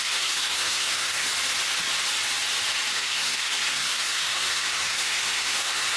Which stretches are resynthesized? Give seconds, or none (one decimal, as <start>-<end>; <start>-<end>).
0.0-1.3; 2.9-6.0

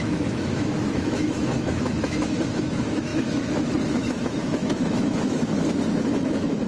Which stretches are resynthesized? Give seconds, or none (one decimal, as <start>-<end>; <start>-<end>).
0.0-6.7